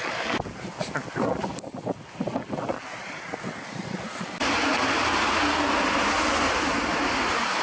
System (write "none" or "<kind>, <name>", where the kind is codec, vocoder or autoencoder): none